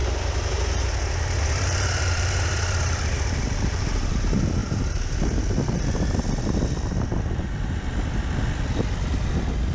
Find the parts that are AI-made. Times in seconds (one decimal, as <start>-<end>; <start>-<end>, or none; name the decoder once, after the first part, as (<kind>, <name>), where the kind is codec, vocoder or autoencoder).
0.0-4.1 (vocoder, BigVGAN v2)